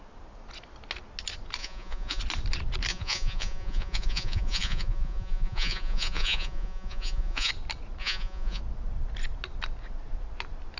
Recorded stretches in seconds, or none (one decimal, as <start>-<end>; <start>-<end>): 0.0-1.6; 2.2-2.9; 7.5-8.0; 8.6-10.8